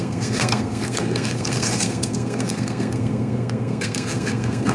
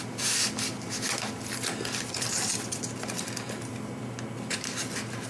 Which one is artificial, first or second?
first